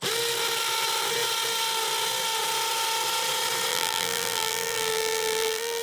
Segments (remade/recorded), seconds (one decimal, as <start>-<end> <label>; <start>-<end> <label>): 0.0-3.7 recorded; 3.7-5.8 remade